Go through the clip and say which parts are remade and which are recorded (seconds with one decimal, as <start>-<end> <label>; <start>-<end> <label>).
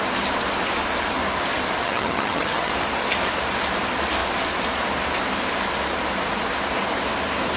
0.0-1.8 recorded; 1.8-2.7 remade; 2.7-7.6 recorded